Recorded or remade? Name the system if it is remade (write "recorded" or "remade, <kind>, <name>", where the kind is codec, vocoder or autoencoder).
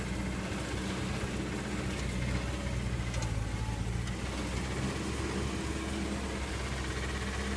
recorded